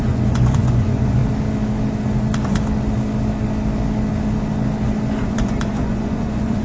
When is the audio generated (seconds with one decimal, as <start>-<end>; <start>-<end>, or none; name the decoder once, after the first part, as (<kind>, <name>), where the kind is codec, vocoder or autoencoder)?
0.0-1.2 (vocoder, Vocos); 5.2-6.6